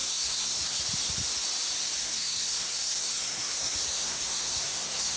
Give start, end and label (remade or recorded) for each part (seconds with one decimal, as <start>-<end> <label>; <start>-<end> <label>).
0.0-0.8 remade; 0.8-2.0 recorded; 2.0-5.2 remade